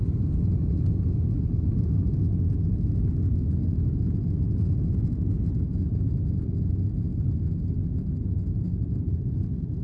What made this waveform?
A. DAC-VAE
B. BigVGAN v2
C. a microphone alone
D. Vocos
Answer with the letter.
C